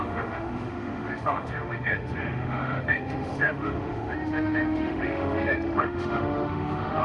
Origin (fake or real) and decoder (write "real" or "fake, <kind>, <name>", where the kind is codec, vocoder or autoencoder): fake, autoencoder, DAC-VAE